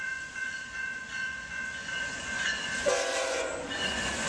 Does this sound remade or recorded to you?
remade